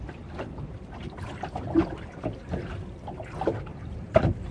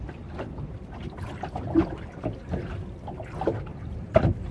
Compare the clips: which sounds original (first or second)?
second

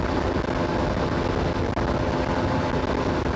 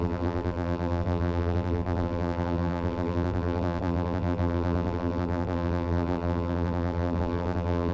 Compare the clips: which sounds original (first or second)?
first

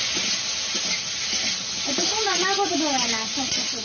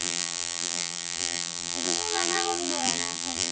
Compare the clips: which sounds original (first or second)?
first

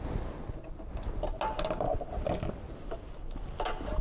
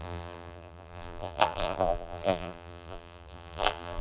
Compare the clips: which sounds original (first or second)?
first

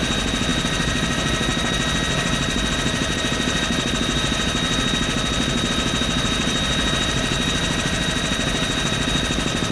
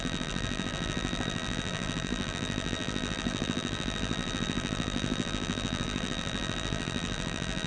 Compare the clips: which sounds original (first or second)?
first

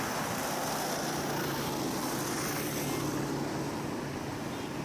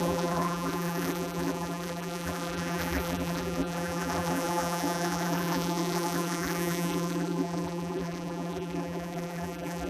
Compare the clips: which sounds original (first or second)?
first